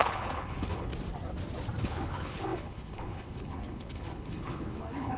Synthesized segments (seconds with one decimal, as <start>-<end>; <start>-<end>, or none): 0.0-0.9; 1.8-5.2